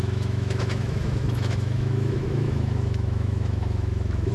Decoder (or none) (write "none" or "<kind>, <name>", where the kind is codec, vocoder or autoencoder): autoencoder, DAC-VAE